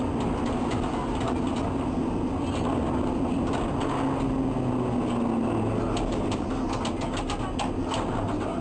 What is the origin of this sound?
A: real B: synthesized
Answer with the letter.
A